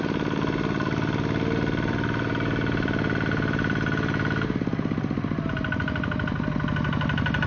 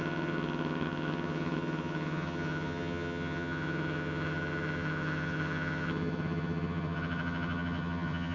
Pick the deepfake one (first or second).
second